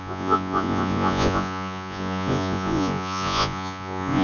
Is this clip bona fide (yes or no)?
no